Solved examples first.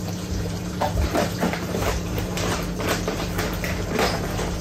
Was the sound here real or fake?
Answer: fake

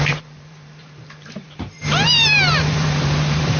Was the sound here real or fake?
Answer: fake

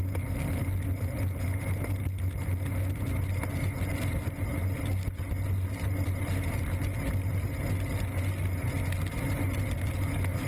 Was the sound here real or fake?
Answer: real